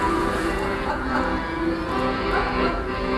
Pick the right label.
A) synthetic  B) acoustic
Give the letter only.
A